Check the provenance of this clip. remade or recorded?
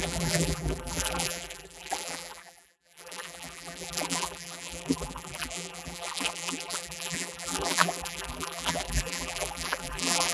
remade